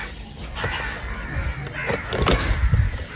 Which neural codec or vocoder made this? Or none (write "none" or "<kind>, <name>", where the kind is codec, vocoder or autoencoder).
none